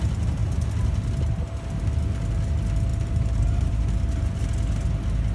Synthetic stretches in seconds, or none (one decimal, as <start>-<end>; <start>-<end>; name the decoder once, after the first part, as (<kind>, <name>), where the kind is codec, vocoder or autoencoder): 2.9-4.4 (vocoder, BigVGAN v2)